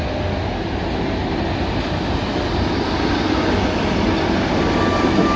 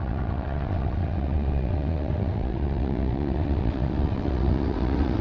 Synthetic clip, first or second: second